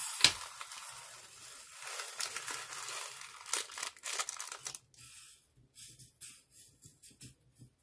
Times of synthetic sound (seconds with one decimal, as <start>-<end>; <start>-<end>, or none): none